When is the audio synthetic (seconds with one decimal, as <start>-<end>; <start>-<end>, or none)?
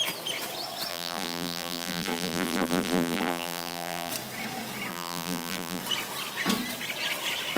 0.9-4.1; 4.9-5.8